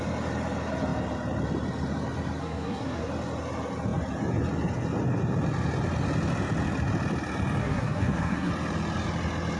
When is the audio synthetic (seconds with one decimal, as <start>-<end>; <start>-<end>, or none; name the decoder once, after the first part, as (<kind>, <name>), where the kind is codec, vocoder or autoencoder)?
2.4-3.1 (codec, SNAC); 7.6-8.5